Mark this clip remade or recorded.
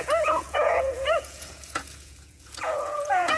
remade